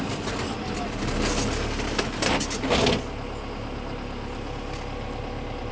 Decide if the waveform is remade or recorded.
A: recorded